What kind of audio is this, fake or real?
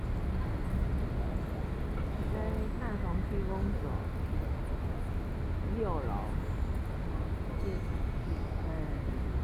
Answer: real